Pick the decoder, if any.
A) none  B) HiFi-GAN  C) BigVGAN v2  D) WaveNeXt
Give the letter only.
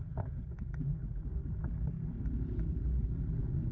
A